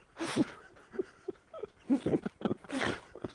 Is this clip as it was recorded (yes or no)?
yes